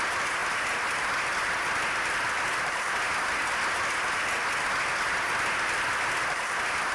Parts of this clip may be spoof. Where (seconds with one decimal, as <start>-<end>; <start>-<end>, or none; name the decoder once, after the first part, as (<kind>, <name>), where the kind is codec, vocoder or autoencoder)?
none